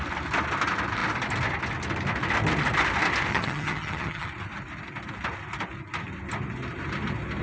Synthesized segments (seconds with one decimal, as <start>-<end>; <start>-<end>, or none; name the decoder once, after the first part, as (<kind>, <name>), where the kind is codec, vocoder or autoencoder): 3.3-4.3 (vocoder, HiFi-GAN)